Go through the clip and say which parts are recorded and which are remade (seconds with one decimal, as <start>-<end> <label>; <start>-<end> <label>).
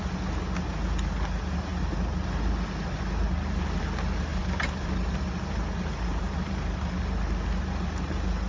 0.0-4.3 recorded; 4.3-5.1 remade; 5.1-6.1 recorded; 6.1-6.8 remade; 6.8-8.5 recorded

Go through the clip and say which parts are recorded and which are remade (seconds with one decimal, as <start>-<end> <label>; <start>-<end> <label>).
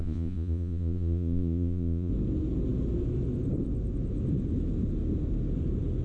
0.0-2.1 remade; 2.1-6.0 recorded